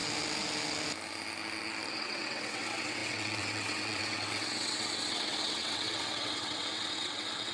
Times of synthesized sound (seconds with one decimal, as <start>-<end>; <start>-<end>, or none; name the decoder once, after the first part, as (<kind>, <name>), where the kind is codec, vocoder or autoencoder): 1.9-7.5 (vocoder, WaveNeXt)